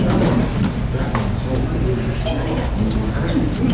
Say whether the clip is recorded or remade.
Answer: recorded